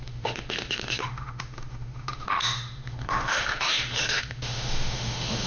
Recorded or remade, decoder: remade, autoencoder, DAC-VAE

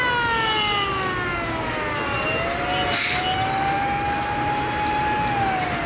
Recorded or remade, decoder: recorded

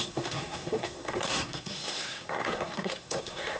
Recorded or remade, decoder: remade, codec, SNAC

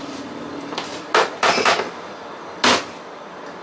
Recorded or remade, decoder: recorded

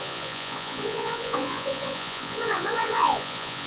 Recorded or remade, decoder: remade, vocoder, Vocos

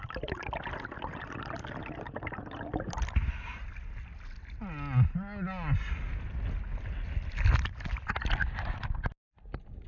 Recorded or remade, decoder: recorded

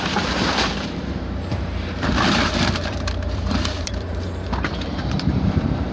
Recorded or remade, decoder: remade, vocoder, BigVGAN v2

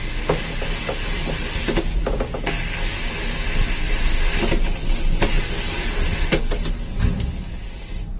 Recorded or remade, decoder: recorded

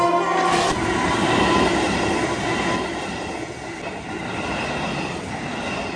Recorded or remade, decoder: recorded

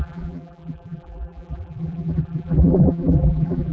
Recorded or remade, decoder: remade, vocoder, BigVGAN v2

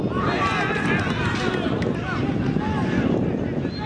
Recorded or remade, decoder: recorded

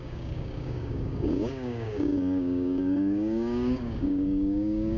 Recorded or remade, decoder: remade, codec, DAC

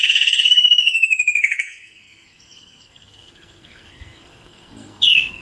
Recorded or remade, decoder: remade, codec, SNAC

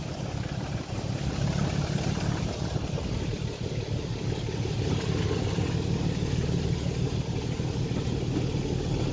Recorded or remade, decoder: recorded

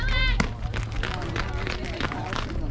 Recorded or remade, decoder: recorded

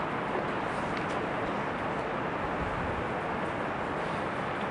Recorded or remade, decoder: recorded